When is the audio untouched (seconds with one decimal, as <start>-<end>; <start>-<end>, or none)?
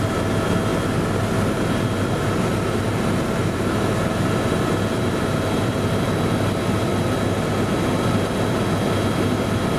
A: 0.0-9.8